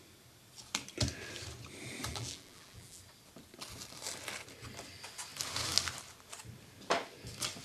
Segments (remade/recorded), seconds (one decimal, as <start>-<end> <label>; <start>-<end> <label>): 0.0-2.1 recorded; 2.1-3.0 remade; 3.0-7.6 recorded